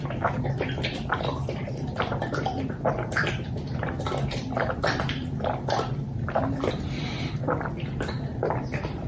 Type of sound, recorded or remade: remade